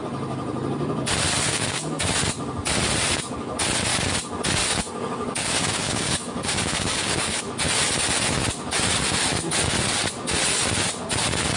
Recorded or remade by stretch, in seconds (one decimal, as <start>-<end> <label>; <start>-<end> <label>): 0.0-1.5 recorded; 1.5-2.1 remade; 2.1-4.6 recorded; 4.6-7.4 remade; 7.4-11.6 recorded